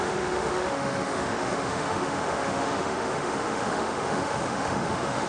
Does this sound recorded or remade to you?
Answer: remade